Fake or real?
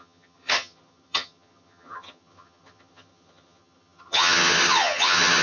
fake